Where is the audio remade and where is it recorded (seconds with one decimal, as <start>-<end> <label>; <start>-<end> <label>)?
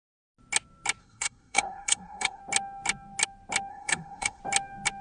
0.0-1.0 recorded; 1.0-2.4 remade; 2.4-3.7 recorded; 3.7-4.4 remade; 4.4-5.0 recorded